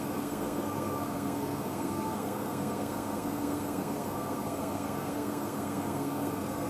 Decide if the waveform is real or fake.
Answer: fake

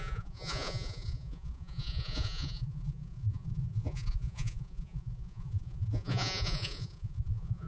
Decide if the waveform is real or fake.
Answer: fake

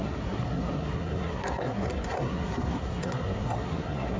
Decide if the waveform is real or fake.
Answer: fake